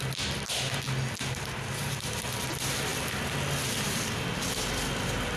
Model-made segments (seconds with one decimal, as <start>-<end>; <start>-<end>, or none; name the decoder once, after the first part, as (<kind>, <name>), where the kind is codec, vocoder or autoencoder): none